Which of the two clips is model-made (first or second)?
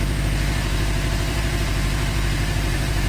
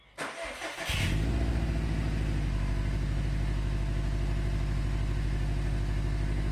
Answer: first